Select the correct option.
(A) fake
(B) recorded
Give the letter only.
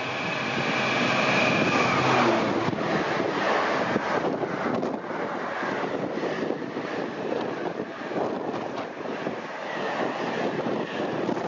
B